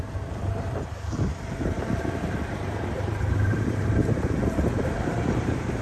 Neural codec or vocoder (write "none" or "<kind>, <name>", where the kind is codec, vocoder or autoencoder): vocoder, BigVGAN v2